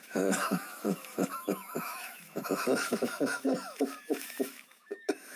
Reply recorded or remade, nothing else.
remade